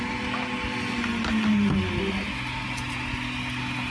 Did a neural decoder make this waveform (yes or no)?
no